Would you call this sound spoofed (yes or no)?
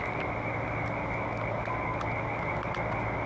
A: no